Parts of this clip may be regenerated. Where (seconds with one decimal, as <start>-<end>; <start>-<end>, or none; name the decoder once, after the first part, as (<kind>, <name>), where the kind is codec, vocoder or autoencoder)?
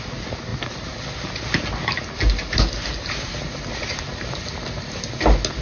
none